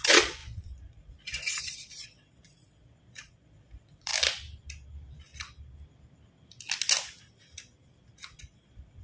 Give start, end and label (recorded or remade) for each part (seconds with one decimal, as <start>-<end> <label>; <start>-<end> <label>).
0.0-4.1 remade; 4.1-8.4 recorded; 8.4-9.0 remade